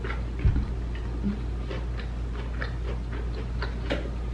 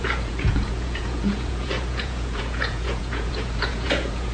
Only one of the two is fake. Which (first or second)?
second